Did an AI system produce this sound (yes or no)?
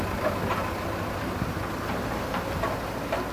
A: no